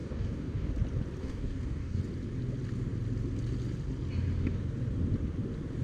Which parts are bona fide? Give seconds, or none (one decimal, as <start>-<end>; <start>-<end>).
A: 0.7-1.2; 2.0-5.8